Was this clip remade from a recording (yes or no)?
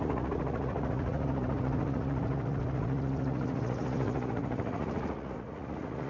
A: yes